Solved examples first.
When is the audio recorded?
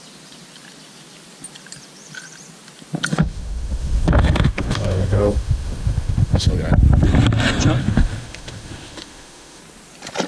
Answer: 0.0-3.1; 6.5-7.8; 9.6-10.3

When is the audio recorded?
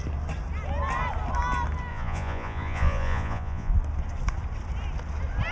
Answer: 0.0-1.9; 3.7-5.5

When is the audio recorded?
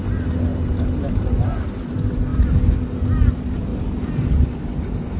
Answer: 0.0-5.2